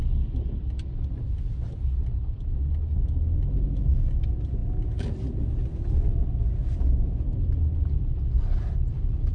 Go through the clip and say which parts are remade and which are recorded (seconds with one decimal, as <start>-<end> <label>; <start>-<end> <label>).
0.0-9.3 recorded